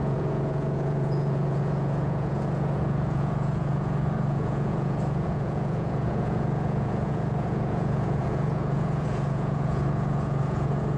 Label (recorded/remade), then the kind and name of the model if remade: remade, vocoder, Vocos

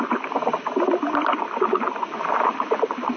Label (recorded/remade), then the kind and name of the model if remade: recorded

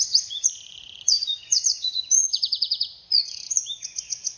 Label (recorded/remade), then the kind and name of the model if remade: remade, vocoder, Vocos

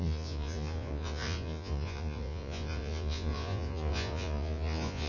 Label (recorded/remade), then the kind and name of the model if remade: remade, vocoder, Vocos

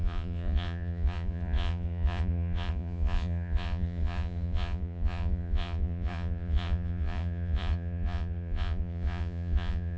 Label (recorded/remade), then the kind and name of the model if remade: remade, vocoder, Vocos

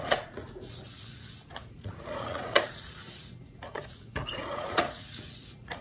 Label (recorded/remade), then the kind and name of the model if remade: remade, vocoder, Vocos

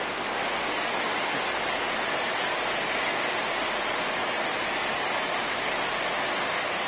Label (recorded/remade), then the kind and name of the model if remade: recorded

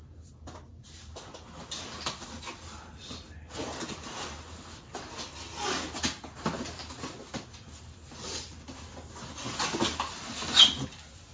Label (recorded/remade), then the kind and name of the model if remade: recorded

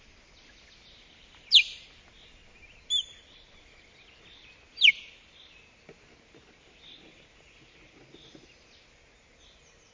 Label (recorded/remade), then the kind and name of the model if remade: recorded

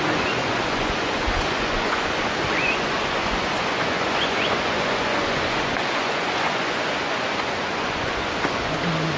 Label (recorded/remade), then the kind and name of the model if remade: remade, vocoder, Vocos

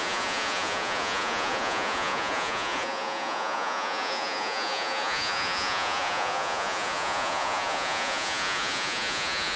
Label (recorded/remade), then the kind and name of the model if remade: remade, vocoder, Vocos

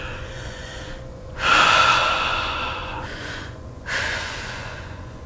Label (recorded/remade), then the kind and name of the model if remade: remade, vocoder, Vocos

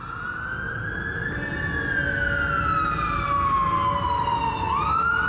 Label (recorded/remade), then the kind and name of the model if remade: recorded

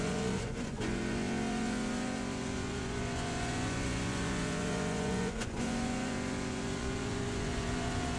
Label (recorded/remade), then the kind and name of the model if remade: remade, vocoder, Vocos